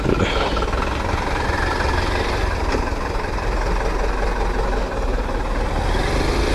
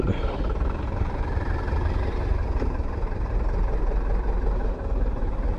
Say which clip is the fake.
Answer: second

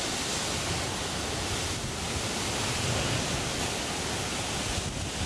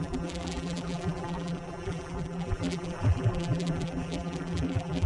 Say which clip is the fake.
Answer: second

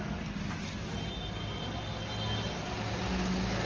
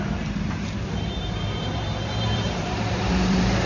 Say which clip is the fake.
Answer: second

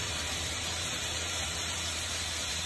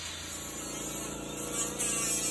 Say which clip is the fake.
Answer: first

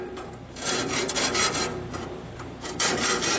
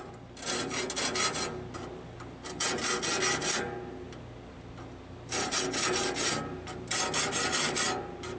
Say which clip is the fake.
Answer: first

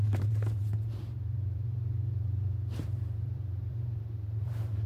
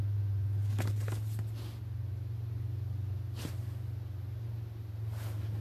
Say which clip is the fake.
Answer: first